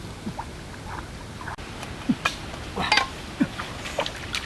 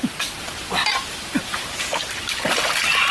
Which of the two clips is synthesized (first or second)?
second